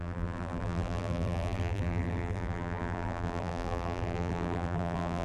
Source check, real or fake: fake